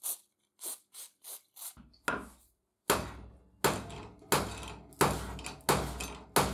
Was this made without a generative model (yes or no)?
yes